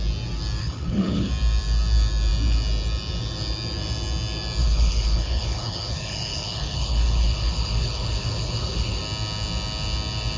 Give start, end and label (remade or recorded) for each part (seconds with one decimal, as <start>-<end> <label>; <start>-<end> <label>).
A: 0.0-0.6 recorded; 0.6-1.3 remade; 1.3-4.6 recorded; 4.6-9.0 remade; 9.0-10.4 recorded